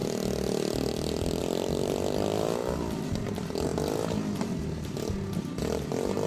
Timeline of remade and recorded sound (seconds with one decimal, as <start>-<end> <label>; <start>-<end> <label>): 0.0-2.6 recorded; 2.6-3.1 remade; 3.1-6.3 recorded